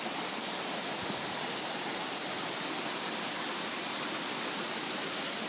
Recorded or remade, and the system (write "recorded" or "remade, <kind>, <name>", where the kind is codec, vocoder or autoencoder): recorded